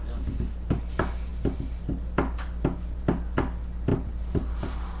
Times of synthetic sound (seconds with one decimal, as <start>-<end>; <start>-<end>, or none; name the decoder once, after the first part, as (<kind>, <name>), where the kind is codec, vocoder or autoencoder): none